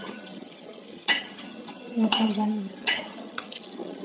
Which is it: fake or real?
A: fake